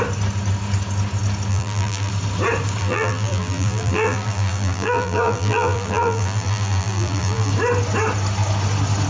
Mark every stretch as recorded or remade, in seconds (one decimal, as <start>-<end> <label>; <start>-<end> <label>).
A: 0.0-1.5 recorded; 1.5-2.1 remade; 2.1-2.8 recorded; 2.8-7.5 remade; 7.5-9.1 recorded